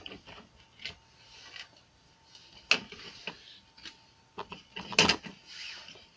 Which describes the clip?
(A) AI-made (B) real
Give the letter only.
B